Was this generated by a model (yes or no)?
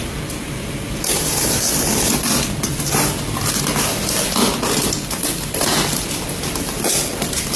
no